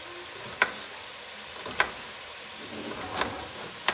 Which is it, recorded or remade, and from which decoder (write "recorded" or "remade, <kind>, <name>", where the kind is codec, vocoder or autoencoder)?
recorded